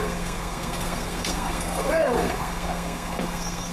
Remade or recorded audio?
remade